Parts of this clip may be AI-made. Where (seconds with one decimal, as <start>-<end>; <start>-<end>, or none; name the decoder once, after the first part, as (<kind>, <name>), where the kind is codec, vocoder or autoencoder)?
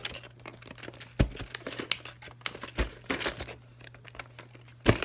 none